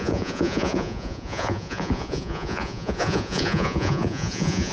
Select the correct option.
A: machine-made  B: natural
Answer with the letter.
A